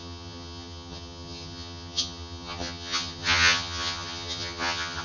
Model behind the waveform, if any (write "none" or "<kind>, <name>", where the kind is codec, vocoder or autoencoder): vocoder, HiFi-GAN